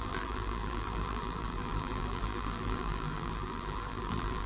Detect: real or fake fake